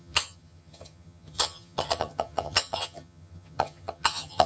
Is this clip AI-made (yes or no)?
yes